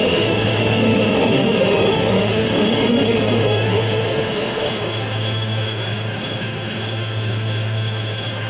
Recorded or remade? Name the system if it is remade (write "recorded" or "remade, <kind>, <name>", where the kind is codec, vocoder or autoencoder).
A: remade, autoencoder, DAC-VAE